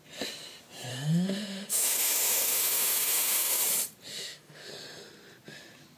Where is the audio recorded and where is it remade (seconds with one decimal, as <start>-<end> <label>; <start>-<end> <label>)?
0.0-0.9 recorded; 0.9-3.6 remade; 3.6-4.1 recorded; 4.1-4.7 remade; 4.7-6.0 recorded